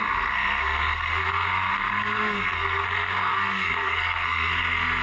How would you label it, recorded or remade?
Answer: remade